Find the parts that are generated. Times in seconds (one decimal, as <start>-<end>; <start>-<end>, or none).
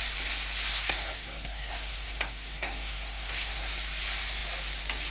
0.7-3.7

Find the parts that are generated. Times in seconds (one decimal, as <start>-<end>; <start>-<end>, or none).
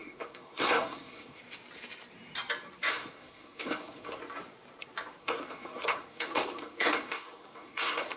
0.0-1.4; 2.9-4.2; 5.2-8.2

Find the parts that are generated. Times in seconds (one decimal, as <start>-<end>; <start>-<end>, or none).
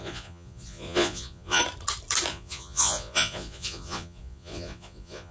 0.0-1.6; 2.3-5.3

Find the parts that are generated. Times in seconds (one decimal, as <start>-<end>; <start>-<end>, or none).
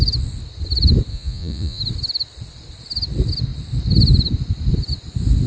1.1-1.8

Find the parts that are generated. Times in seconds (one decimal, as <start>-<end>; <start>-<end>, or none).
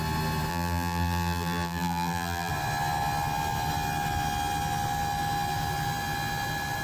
0.5-2.5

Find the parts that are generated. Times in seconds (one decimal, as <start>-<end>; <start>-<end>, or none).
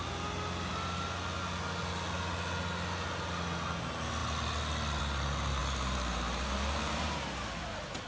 5.6-8.1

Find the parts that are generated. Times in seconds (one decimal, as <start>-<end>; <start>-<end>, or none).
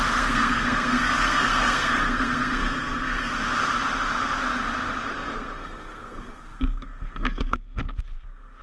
0.0-3.3; 5.2-8.6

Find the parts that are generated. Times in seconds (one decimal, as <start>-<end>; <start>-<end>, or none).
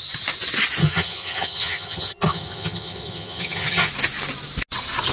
0.8-3.9